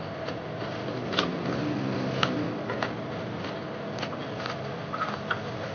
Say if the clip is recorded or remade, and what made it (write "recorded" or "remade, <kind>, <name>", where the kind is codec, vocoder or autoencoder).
recorded